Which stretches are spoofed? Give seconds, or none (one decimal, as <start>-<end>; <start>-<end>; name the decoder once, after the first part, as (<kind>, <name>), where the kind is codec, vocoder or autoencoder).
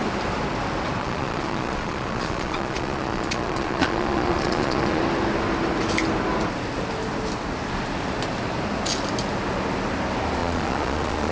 1.0-5.0 (vocoder, Vocos); 10.4-11.3